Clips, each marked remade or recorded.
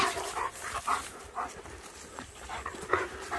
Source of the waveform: recorded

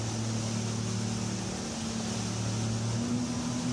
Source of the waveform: recorded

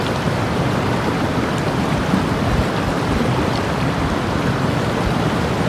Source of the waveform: recorded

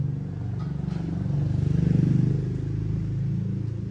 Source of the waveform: recorded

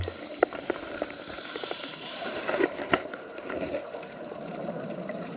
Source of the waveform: remade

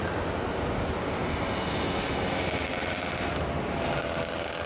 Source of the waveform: recorded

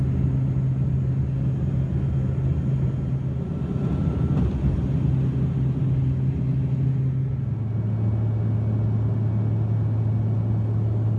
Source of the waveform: recorded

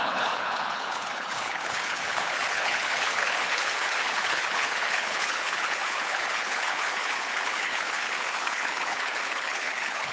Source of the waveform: remade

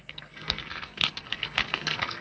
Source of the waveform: remade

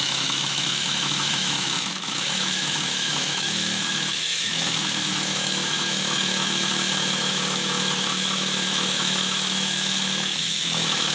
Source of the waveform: remade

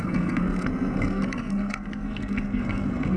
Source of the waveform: remade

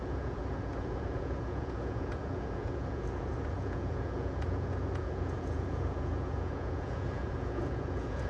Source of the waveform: remade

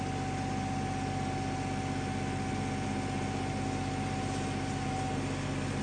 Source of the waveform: recorded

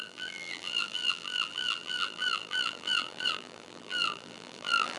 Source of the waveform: remade